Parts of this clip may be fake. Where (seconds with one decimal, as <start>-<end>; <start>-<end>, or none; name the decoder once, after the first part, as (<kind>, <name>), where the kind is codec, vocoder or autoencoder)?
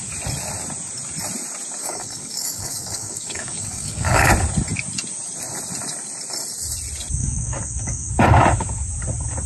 1.8-4.3 (codec, DAC); 7.2-8.1